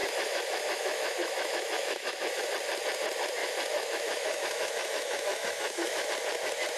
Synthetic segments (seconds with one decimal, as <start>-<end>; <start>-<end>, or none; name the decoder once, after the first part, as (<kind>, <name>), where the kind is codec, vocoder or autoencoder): 0.0-2.4 (autoencoder, DAC-VAE); 3.4-6.1